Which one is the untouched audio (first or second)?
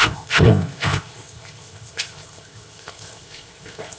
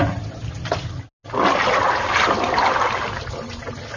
second